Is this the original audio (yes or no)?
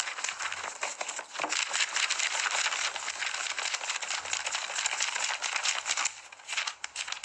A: yes